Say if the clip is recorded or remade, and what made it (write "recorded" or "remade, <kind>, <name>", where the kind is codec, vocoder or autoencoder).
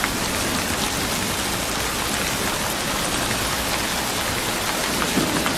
recorded